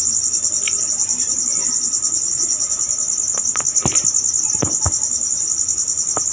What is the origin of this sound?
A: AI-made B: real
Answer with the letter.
B